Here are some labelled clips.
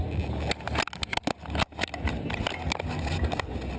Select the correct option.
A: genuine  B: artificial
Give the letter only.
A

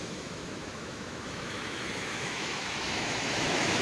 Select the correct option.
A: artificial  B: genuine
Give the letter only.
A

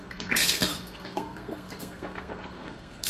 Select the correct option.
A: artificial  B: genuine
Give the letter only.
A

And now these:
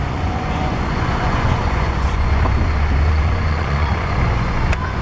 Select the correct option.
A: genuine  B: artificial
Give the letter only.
B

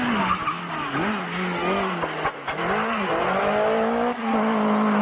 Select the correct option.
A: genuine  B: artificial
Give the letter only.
A